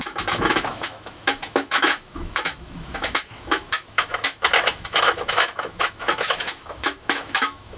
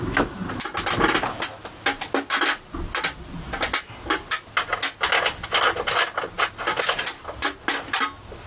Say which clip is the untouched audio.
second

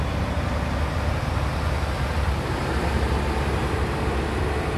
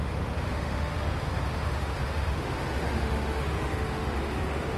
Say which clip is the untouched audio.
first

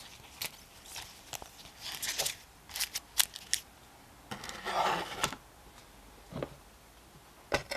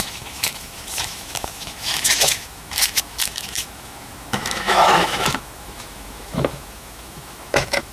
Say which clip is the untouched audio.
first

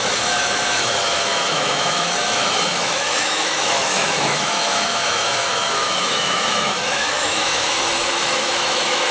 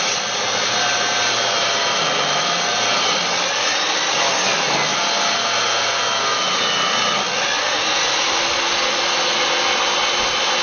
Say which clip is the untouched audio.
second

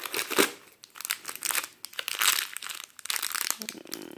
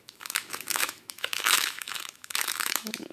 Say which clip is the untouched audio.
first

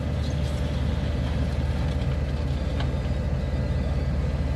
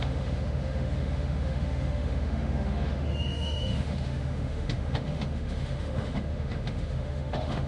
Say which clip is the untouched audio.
first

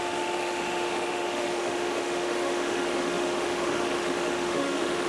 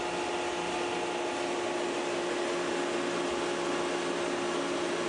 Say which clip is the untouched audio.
second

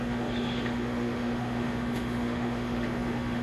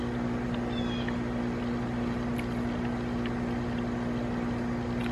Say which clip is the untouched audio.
second